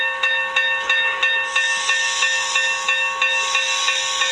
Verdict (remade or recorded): recorded